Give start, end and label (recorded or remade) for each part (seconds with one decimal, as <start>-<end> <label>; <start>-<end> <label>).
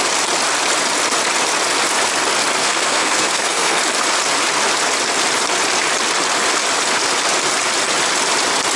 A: 0.0-2.6 recorded; 2.6-3.8 remade; 3.8-8.8 recorded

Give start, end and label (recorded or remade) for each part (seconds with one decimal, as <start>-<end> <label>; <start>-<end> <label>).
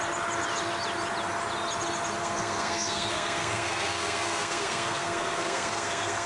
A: 0.0-2.2 recorded; 2.2-6.3 remade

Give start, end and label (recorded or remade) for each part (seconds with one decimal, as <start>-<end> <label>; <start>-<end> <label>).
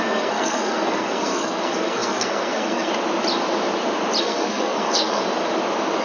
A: 0.0-2.9 remade; 2.9-4.2 recorded; 4.2-5.2 remade; 5.2-6.0 recorded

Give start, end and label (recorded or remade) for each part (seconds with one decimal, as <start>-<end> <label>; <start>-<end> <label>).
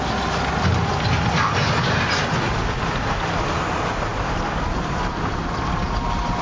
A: 0.0-6.4 recorded